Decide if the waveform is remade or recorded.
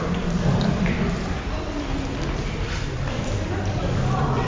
recorded